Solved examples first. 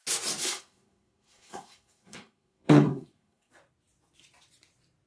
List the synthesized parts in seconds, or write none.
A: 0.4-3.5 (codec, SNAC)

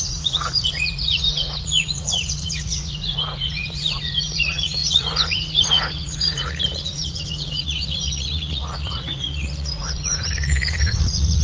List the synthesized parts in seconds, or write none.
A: 0.0-11.4 (vocoder, Vocos)

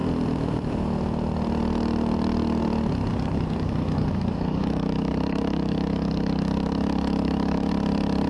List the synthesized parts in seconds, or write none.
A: 3.1-7.7 (codec, DAC)